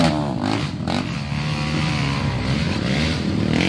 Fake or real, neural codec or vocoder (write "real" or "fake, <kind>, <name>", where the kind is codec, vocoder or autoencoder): real